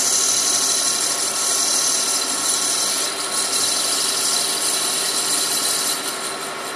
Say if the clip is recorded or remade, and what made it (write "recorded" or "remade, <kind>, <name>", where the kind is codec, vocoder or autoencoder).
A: recorded